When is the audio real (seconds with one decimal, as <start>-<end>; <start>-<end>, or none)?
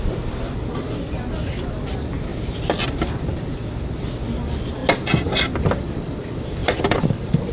0.0-6.6